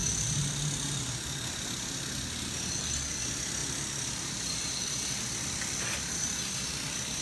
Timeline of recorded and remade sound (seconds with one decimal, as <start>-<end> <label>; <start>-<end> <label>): 0.0-7.2 recorded